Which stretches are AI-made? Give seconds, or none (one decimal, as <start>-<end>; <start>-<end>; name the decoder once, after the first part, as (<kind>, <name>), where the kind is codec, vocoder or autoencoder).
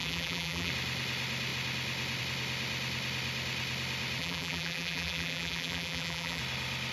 0.0-0.7 (vocoder, BigVGAN v2); 4.2-6.4